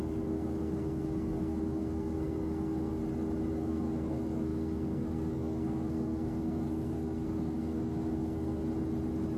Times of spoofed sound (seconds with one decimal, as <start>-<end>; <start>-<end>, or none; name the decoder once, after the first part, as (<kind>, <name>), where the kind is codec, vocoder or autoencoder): 0.0-3.0 (codec, SNAC); 3.5-8.6